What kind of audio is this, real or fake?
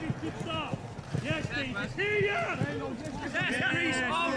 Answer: real